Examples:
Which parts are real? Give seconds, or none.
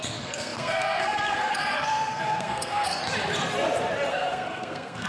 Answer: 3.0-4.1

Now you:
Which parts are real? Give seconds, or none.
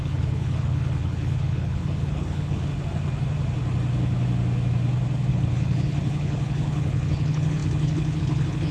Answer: 2.7-5.3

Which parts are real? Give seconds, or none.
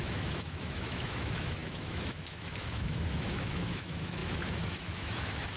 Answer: none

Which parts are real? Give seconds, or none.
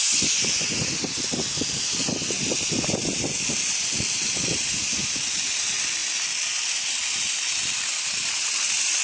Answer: 0.8-9.0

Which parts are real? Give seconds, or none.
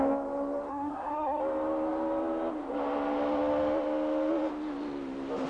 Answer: 0.0-0.7; 1.4-5.5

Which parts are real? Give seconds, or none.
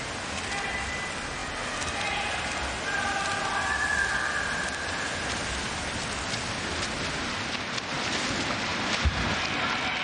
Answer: 0.0-8.7; 9.4-10.0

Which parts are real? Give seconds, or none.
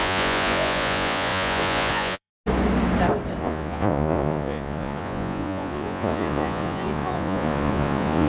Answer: 2.3-3.4